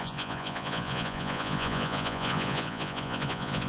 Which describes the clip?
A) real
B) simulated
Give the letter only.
B